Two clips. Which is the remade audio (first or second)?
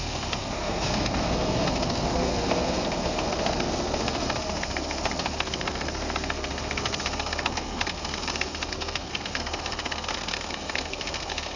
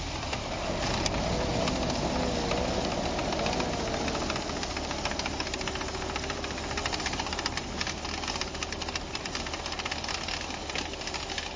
first